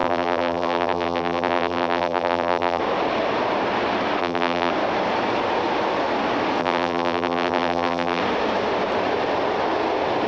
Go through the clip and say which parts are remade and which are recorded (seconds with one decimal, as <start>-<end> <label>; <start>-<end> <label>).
0.0-2.8 remade; 2.8-4.2 recorded; 4.2-4.7 remade; 4.7-6.6 recorded; 6.6-8.2 remade; 8.2-10.3 recorded